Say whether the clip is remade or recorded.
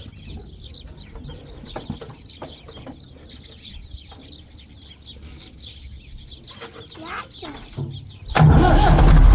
recorded